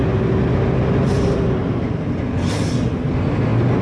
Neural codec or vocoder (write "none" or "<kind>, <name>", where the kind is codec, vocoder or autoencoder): none